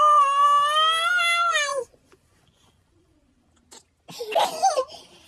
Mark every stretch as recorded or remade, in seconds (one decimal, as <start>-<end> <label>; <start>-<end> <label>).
0.0-1.7 recorded; 1.7-3.5 remade; 3.5-5.3 recorded